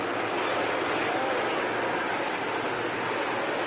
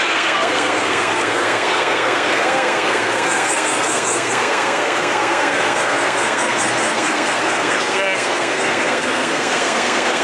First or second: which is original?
first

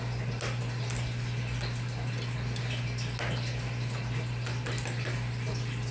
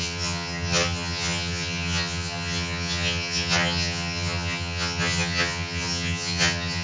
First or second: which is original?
first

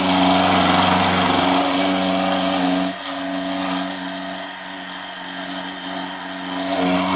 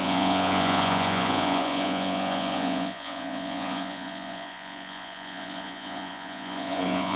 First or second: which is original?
first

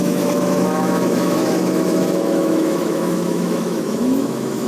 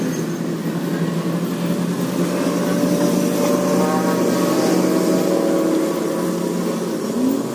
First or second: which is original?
second